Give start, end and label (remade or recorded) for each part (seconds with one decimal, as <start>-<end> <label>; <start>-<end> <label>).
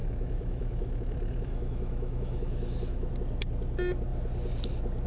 0.0-3.1 remade; 3.1-5.1 recorded